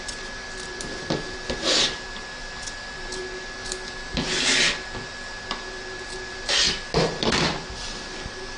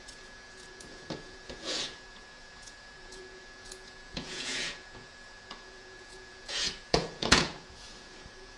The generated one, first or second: second